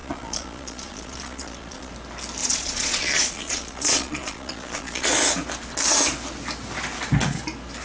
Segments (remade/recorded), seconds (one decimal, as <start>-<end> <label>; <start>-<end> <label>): 0.0-1.9 remade; 1.9-2.4 recorded; 2.4-5.1 remade; 5.1-7.8 recorded